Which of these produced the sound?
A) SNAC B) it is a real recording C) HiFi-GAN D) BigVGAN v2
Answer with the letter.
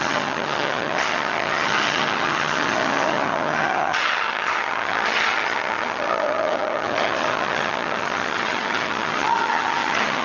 C